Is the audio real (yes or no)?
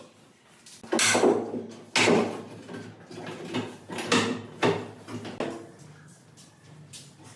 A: yes